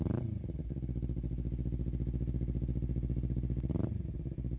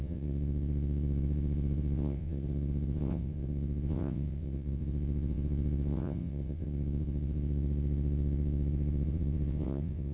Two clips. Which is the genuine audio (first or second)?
first